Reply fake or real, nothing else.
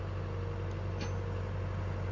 real